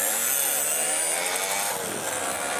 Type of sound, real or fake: real